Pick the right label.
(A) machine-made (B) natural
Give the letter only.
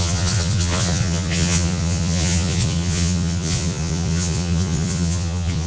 A